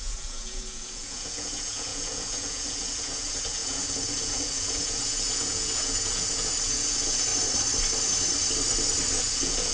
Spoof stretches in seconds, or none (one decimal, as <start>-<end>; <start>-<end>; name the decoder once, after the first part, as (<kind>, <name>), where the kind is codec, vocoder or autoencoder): 0.0-7.3 (vocoder, Vocos); 9.2-9.7